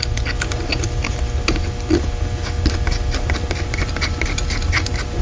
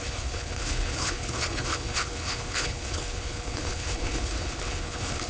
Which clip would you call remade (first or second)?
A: second